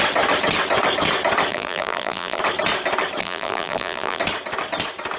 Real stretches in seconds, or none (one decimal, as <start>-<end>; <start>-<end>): 0.0-1.5; 2.4-3.2; 4.2-5.2